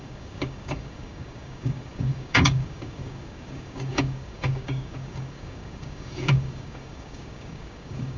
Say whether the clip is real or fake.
fake